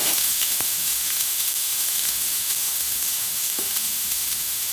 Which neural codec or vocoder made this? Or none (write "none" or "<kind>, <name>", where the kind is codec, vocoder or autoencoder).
autoencoder, DAC-VAE